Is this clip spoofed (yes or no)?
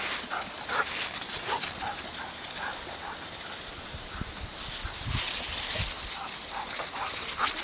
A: no